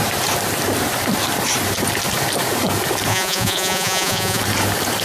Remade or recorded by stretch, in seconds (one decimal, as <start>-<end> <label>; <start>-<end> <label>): 0.0-3.1 recorded; 3.1-4.4 remade; 4.4-5.0 recorded